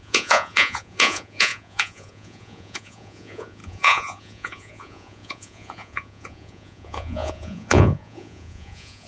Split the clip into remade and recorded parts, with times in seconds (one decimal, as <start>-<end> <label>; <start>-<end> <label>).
0.0-9.1 remade